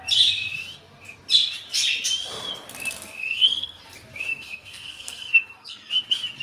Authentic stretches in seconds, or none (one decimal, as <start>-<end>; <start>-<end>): 0.0-3.2; 3.8-4.3; 5.9-6.4